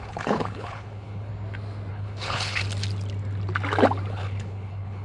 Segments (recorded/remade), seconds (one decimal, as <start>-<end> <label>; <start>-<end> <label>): 0.0-1.3 remade; 1.3-1.9 recorded; 1.9-2.6 remade; 2.6-4.1 recorded; 4.1-5.0 remade